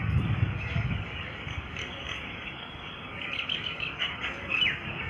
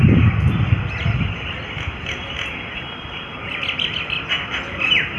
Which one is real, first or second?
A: second